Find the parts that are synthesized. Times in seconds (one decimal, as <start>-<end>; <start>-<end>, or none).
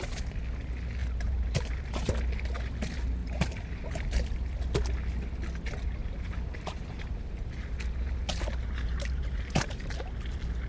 1.0-2.1; 3.2-3.9; 6.0-9.9